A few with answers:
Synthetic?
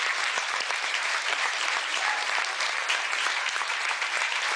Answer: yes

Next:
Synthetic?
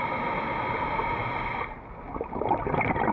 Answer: no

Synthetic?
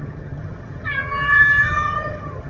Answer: yes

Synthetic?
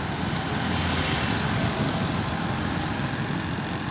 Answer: no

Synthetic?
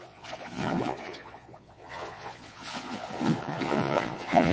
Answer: yes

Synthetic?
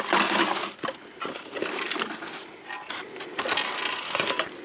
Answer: no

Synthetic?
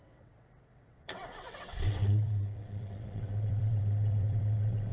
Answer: yes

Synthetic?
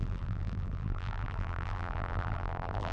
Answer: yes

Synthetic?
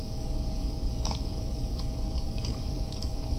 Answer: yes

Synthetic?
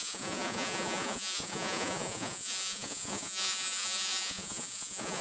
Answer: yes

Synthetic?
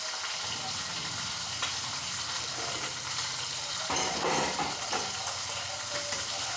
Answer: yes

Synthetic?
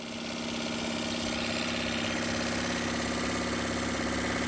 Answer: no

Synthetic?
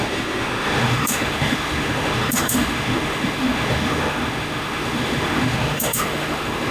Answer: yes